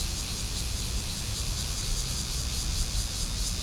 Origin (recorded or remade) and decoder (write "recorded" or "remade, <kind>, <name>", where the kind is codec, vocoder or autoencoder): recorded